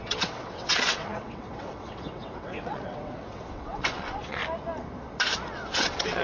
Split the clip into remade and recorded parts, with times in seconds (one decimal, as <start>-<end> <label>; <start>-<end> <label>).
0.0-4.4 remade; 4.4-5.5 recorded; 5.5-6.2 remade